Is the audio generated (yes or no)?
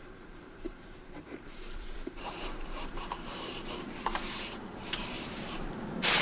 yes